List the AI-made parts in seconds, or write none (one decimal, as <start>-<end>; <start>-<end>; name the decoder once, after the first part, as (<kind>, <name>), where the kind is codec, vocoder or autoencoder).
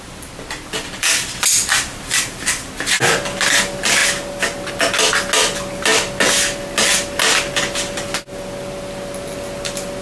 none